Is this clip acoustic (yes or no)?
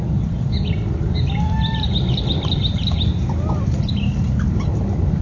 yes